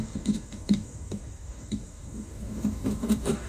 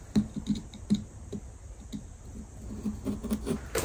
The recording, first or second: second